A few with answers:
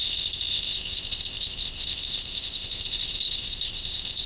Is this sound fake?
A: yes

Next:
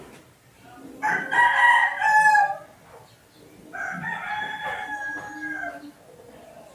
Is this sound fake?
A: no